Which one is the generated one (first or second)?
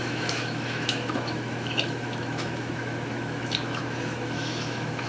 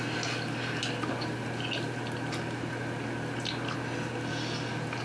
first